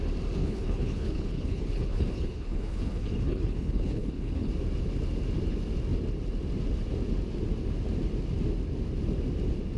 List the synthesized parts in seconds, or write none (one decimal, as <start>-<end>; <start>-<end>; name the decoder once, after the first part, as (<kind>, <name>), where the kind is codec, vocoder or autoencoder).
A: 0.4-4.5 (codec, HILCodec)